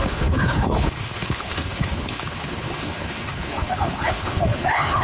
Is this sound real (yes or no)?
no